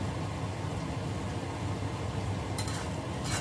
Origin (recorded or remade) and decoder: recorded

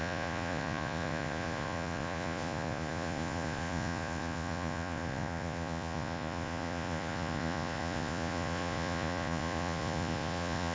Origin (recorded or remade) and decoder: remade, vocoder, Vocos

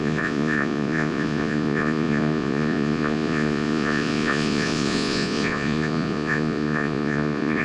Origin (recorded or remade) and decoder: remade, vocoder, Vocos